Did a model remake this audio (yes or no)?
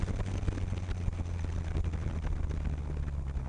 no